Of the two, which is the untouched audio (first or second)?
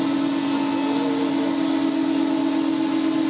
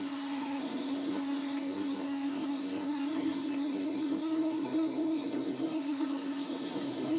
first